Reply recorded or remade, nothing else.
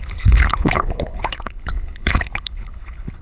remade